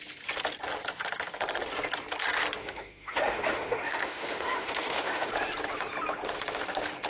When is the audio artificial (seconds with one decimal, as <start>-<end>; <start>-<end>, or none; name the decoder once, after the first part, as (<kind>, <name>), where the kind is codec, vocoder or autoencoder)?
2.6-5.3 (autoencoder, DAC-VAE)